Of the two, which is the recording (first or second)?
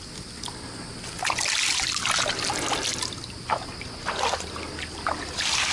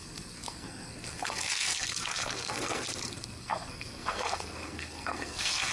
first